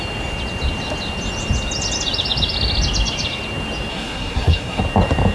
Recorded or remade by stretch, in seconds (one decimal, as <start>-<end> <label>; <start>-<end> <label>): 0.0-3.9 recorded; 3.9-4.8 remade; 4.8-5.3 recorded